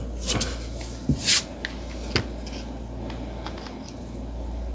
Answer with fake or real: real